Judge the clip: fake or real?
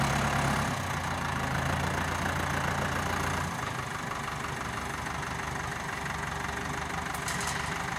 real